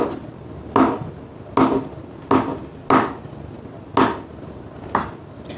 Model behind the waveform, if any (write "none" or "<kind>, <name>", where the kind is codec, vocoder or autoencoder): none